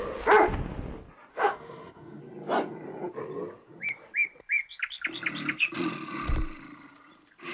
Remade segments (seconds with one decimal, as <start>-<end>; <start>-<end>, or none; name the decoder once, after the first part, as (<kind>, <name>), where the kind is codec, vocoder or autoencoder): 1.3-2.2 (autoencoder, DAC-VAE)